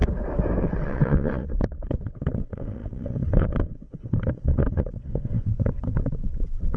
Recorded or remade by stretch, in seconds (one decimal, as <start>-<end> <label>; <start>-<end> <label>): 0.0-0.6 recorded; 0.6-6.8 remade